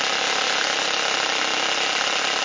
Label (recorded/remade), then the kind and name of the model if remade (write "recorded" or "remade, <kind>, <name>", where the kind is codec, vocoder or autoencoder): recorded